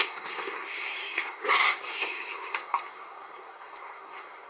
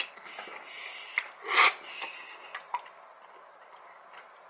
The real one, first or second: second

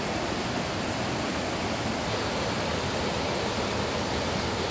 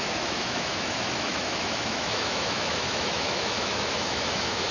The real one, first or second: first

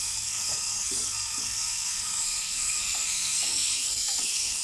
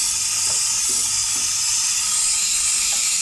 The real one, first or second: second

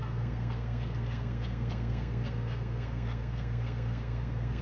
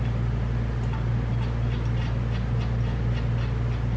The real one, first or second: second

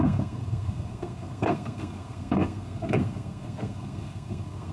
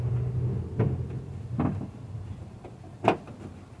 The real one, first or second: second